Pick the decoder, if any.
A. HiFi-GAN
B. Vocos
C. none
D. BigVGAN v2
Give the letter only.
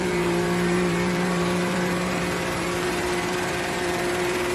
D